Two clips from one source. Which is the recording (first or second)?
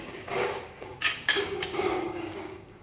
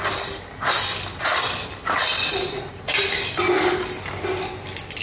second